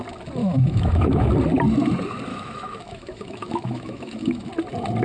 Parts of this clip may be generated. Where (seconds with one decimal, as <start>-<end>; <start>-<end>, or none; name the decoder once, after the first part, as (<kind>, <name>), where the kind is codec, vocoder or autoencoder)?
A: 0.4-1.3 (autoencoder, DAC-VAE); 2.3-4.5